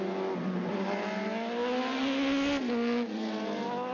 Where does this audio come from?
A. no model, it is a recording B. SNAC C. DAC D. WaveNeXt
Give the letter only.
A